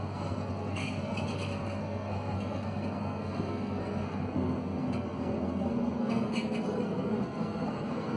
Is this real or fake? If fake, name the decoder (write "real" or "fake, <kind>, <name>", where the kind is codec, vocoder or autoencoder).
fake, codec, SNAC